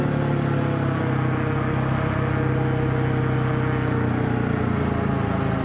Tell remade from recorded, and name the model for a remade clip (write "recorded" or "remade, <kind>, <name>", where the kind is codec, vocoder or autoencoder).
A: recorded